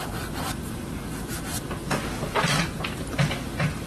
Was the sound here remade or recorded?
recorded